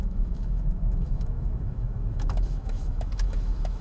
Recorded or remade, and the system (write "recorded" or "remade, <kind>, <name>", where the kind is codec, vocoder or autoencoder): remade, autoencoder, DAC-VAE